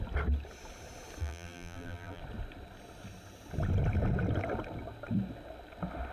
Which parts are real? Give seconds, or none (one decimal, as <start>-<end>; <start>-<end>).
0.0-1.2; 2.2-6.1